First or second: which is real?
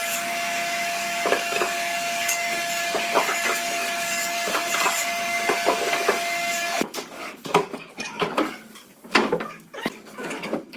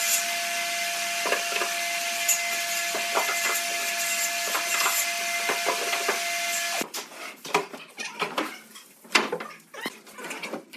second